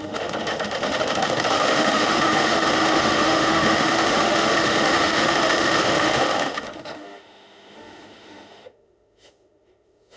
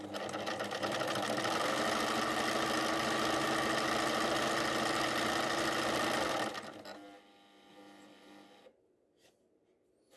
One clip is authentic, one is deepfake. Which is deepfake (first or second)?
first